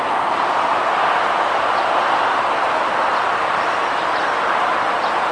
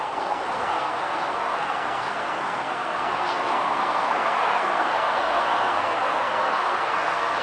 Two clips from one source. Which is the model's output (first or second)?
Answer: second